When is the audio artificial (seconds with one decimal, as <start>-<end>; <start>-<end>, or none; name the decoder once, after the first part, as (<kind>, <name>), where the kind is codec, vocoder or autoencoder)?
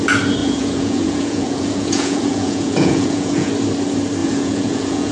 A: 0.4-3.5 (vocoder, Vocos); 4.2-5.1